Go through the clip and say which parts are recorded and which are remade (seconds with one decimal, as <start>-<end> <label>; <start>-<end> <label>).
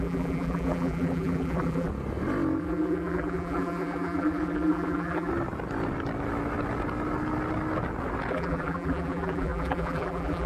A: 0.0-1.9 remade; 1.9-2.6 recorded; 2.6-5.3 remade; 5.3-8.3 recorded; 8.3-10.5 remade